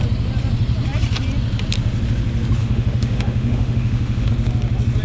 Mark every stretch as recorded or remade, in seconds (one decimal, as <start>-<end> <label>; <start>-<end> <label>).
0.0-2.6 recorded; 2.6-4.3 remade; 4.3-5.0 recorded